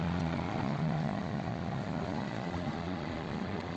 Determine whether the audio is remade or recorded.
remade